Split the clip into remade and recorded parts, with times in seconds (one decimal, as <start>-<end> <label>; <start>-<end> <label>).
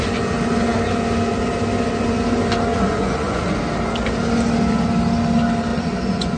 0.0-2.7 recorded; 2.7-3.6 remade; 3.6-5.7 recorded; 5.7-6.4 remade